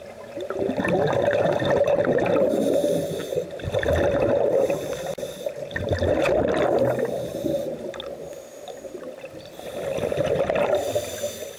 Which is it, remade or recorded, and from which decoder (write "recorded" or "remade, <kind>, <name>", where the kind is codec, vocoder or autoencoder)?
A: recorded